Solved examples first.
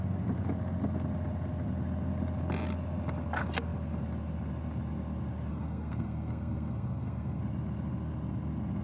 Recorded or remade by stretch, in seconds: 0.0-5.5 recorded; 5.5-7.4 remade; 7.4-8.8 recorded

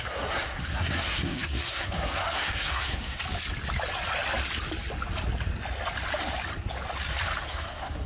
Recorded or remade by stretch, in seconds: 0.0-3.2 remade; 3.2-7.5 recorded; 7.5-8.1 remade

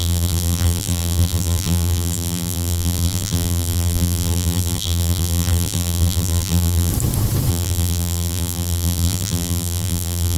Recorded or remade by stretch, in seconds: 0.0-6.9 remade; 6.9-7.5 recorded; 7.5-10.4 remade

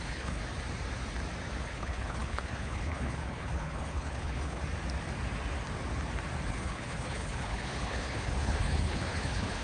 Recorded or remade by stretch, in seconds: 0.0-0.4 remade; 0.4-1.6 recorded; 1.6-4.6 remade; 4.6-6.5 recorded; 6.5-9.6 remade

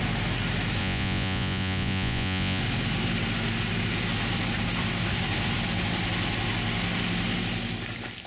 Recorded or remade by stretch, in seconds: 0.0-0.8 recorded; 0.8-2.6 remade; 2.6-8.3 recorded